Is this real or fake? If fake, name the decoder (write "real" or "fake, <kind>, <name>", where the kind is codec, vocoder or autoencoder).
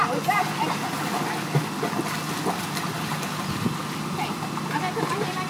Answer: real